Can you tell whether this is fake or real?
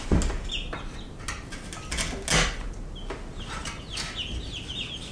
real